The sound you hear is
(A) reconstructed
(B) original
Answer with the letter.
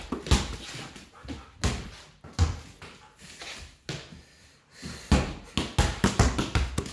B